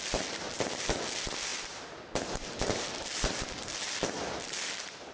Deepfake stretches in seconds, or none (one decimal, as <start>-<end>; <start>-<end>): none